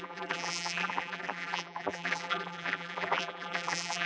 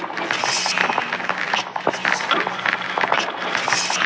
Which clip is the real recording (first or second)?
second